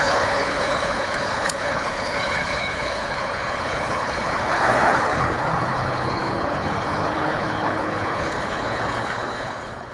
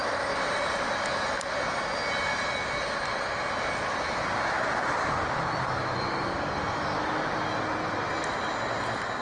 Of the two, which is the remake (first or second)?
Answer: first